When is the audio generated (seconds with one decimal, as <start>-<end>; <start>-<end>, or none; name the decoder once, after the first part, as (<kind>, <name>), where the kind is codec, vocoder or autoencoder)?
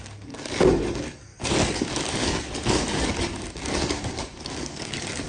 0.0-5.3 (codec, DAC)